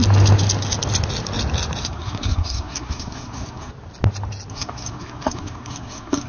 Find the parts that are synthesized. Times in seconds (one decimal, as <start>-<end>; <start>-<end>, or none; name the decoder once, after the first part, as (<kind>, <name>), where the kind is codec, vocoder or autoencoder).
1.8-3.7 (codec, SNAC); 4.5-6.3

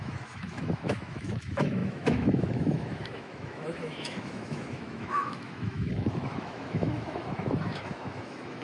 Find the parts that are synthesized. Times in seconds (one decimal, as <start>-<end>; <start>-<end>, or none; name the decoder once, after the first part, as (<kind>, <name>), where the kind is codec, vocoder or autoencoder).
0.0-8.6 (autoencoder, DAC-VAE)

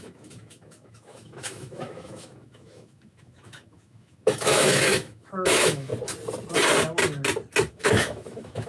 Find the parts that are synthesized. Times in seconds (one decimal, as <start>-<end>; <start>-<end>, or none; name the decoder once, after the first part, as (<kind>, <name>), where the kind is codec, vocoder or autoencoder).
0.0-5.9 (autoencoder, DAC-VAE); 7.7-8.7